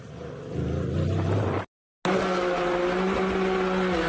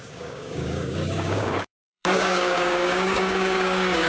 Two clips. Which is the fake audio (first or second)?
second